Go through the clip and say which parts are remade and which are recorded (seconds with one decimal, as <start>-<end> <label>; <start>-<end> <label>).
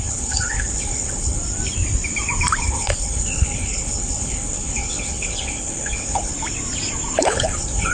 0.0-1.4 remade; 1.4-2.6 recorded; 2.6-6.3 remade; 6.3-7.2 recorded; 7.2-7.9 remade